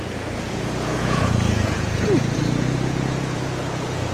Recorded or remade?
remade